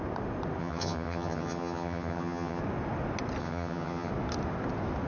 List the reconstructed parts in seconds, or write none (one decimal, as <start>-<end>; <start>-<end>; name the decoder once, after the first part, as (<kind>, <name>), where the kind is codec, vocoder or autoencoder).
0.6-2.6 (vocoder, HiFi-GAN); 3.4-4.1